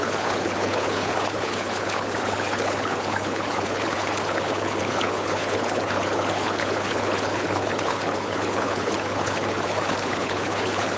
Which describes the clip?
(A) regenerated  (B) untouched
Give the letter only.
A